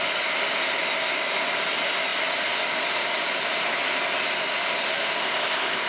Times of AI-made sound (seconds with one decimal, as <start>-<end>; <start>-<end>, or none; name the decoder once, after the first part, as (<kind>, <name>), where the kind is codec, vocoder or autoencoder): 5.2-5.9 (codec, ZipCodec)